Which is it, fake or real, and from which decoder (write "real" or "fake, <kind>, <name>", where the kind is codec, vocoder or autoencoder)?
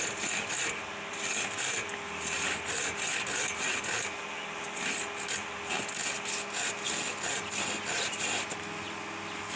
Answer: real